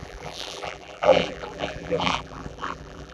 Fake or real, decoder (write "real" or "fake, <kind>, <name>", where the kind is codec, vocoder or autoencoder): fake, vocoder, BigVGAN v2